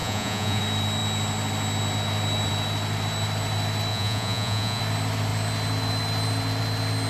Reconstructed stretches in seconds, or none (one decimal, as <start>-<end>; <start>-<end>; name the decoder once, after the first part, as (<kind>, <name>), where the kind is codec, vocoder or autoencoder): 0.0-0.6 (vocoder, Vocos); 3.9-4.8

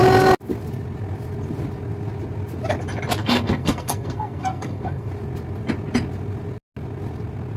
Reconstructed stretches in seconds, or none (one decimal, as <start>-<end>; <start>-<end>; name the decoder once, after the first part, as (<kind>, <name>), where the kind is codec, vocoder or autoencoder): 3.2-5.1 (codec, SNAC)

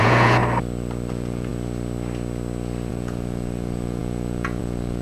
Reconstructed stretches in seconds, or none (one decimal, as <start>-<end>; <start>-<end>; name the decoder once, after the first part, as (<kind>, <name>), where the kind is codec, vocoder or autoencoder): 0.0-0.4 (vocoder, Vocos); 1.1-1.5; 2.9-5.0

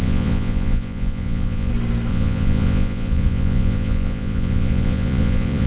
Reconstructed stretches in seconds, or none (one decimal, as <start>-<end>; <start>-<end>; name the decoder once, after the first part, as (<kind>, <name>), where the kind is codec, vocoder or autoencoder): 0.0-1.7 (vocoder, Vocos); 2.1-5.7

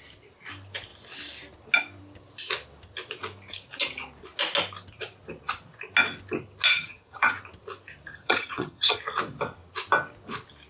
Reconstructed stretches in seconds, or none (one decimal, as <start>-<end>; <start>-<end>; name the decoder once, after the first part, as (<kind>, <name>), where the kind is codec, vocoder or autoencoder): 6.7-7.3 (vocoder, HiFi-GAN); 8.1-9.0